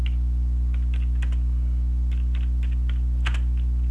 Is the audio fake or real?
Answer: real